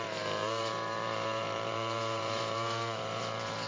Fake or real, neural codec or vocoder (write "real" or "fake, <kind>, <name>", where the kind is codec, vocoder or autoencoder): fake, vocoder, BigVGAN v2